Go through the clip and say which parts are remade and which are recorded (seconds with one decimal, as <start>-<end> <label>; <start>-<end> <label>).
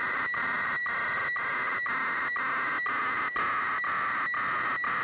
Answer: 0.0-5.0 recorded